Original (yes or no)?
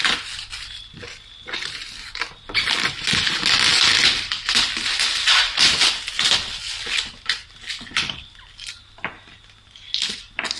yes